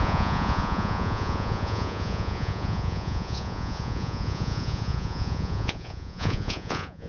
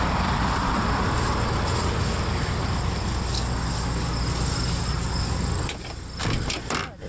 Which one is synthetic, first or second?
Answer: first